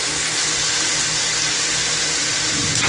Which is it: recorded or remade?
recorded